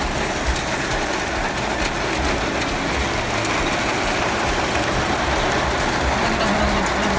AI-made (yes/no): no